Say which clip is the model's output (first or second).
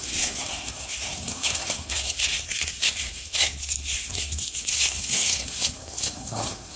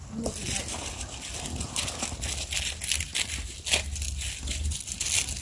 first